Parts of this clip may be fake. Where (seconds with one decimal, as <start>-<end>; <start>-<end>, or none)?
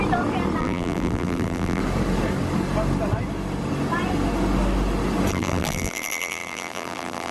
0.6-1.8; 5.3-7.3